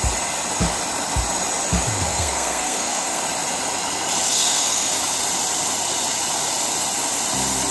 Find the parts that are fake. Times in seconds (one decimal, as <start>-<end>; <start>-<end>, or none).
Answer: 2.1-3.2; 4.3-4.9